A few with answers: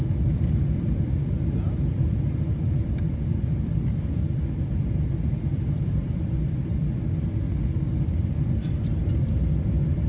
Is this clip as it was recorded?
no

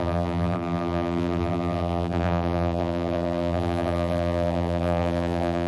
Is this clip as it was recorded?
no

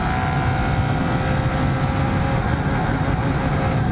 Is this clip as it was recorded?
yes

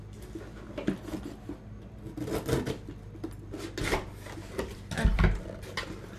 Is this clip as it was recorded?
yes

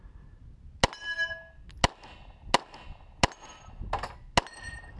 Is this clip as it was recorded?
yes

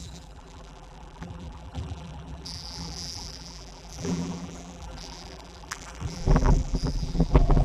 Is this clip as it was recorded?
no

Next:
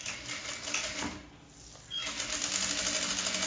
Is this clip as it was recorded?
yes